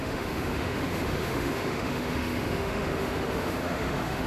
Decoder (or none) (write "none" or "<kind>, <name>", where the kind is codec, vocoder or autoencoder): autoencoder, DAC-VAE